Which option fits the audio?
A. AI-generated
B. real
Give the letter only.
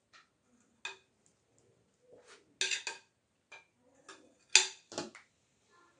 B